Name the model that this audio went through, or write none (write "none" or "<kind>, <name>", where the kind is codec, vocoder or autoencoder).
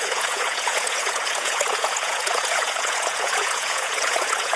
vocoder, Vocos